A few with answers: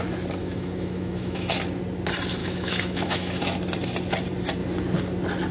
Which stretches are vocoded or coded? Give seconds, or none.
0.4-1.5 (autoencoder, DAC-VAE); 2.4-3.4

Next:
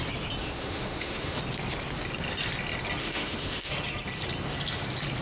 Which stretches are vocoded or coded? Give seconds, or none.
0.4-1.4 (autoencoder, DAC-VAE); 3.0-3.7

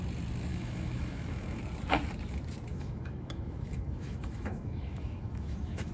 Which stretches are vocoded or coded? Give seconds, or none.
0.5-1.6 (autoencoder, DAC-VAE); 2.7-5.9

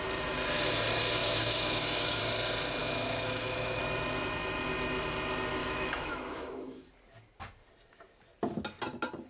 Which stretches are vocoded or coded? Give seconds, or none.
1.2-2.2 (autoencoder, DAC-VAE); 2.8-3.8; 5.6-6.9

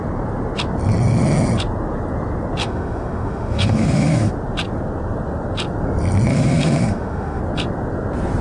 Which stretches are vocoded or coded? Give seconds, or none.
2.6-4.3 (autoencoder, DAC-VAE); 6.3-7.4

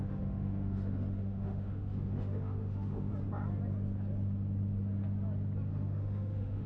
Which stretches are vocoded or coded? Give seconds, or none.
0.0-3.1 (autoencoder, DAC-VAE); 5.7-6.7

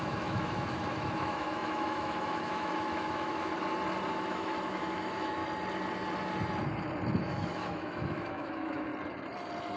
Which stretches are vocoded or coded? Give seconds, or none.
0.0-3.5 (autoencoder, DAC-VAE); 4.1-5.4; 7.2-8.9

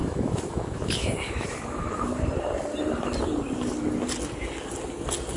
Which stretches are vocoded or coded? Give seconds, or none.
0.0-2.2 (autoencoder, DAC-VAE)